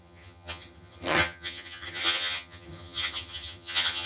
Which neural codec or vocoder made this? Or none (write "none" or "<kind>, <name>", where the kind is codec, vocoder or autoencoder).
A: vocoder, HiFi-GAN